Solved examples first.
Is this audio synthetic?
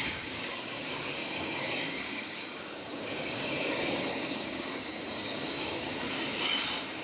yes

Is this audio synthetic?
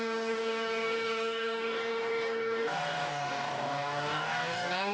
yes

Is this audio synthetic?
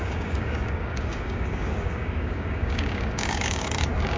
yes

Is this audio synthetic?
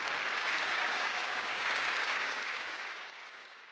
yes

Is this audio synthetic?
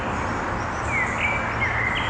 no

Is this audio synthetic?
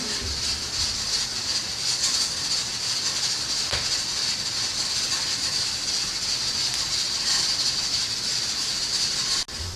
no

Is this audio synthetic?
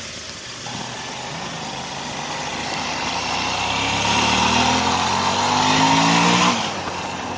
no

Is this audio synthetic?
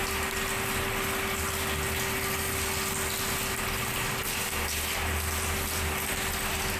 no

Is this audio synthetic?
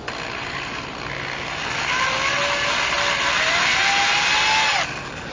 no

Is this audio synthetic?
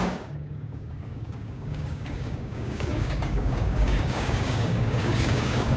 yes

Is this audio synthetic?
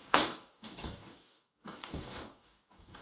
yes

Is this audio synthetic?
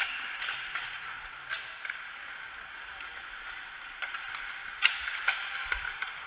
no